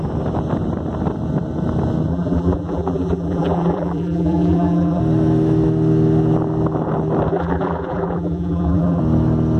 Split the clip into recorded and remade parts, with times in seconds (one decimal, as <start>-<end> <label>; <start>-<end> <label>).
0.0-2.1 recorded; 2.1-5.0 remade; 5.0-7.3 recorded; 7.3-9.0 remade; 9.0-9.6 recorded